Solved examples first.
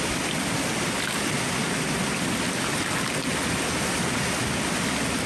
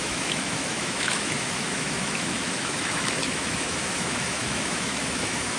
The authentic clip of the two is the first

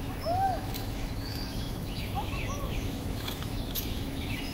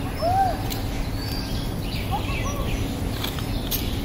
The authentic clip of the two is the second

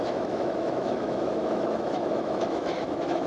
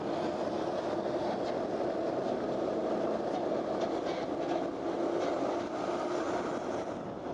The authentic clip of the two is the second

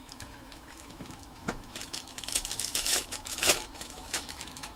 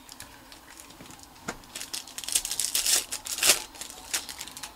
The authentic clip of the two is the second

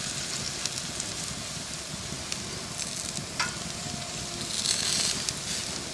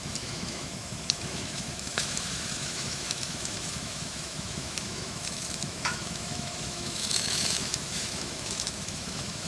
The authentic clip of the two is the first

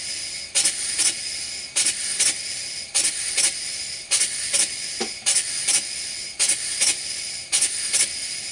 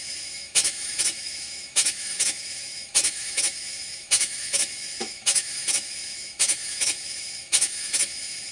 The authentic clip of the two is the first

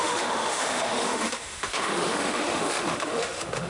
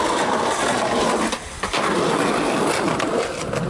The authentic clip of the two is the second